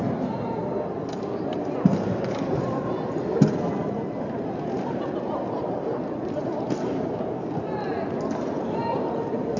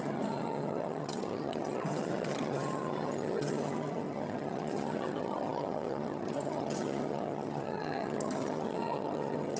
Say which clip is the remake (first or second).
second